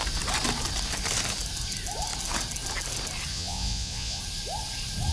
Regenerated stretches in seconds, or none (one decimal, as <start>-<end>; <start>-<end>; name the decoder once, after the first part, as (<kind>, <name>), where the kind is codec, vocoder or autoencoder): 3.3-4.2 (vocoder, Vocos)